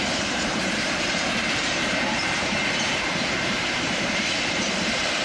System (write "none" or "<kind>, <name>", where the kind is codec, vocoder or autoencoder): vocoder, BigVGAN v2